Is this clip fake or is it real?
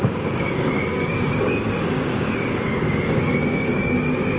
fake